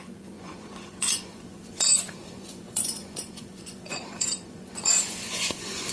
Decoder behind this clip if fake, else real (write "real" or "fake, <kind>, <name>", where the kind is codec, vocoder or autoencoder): fake, vocoder, Vocos